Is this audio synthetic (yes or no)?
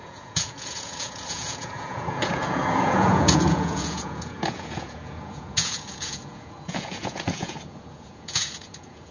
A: yes